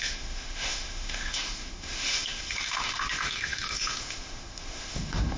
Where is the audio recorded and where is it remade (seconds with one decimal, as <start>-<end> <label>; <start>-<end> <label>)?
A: 0.0-5.4 remade